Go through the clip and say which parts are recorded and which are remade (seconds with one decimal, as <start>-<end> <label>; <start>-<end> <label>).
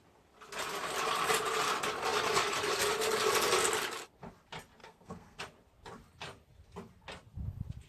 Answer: 0.0-4.8 recorded; 4.8-5.4 remade; 5.4-7.9 recorded